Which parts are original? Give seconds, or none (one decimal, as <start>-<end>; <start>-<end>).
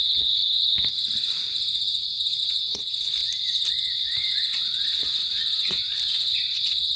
0.4-2.4; 3.2-3.7; 5.8-6.4